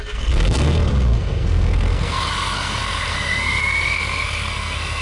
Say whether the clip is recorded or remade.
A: remade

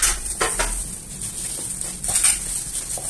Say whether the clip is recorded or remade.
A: recorded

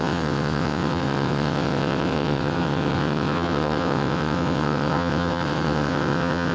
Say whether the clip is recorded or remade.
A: remade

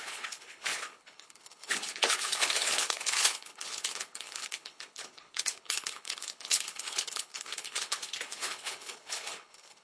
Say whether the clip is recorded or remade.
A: remade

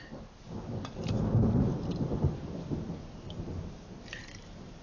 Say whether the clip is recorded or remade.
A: recorded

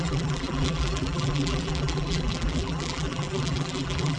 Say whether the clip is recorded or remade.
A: remade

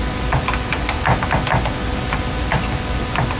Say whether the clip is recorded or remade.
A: recorded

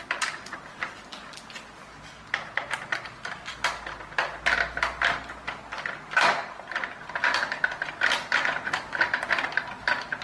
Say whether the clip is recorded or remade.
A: recorded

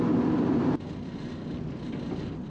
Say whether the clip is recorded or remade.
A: recorded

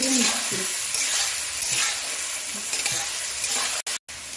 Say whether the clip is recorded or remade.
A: recorded